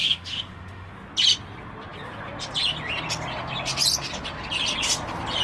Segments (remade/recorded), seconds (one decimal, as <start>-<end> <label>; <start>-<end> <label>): 0.0-0.9 remade; 0.9-5.4 recorded